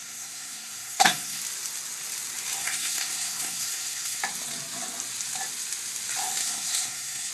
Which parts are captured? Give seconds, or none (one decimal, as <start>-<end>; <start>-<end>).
1.4-2.6; 4.2-6.4